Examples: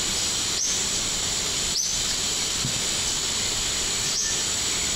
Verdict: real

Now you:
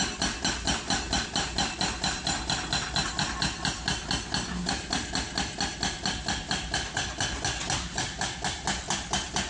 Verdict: real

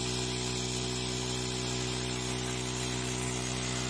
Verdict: real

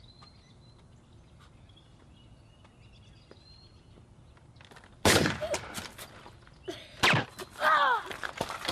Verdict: real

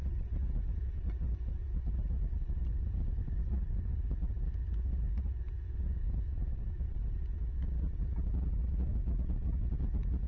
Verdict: real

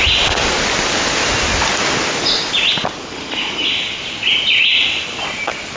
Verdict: real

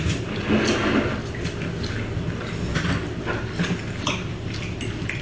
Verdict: real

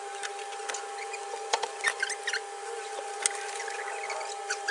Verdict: real